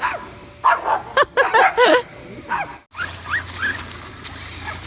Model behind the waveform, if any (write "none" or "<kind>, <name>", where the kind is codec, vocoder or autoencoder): none